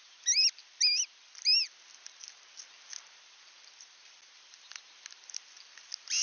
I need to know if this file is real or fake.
real